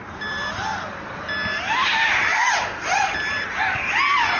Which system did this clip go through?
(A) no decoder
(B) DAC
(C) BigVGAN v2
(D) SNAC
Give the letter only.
A